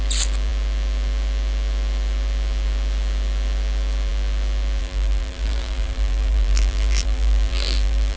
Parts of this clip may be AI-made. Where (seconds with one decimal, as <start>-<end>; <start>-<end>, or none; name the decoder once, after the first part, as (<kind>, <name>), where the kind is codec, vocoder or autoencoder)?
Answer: 4.8-8.2 (vocoder, BigVGAN v2)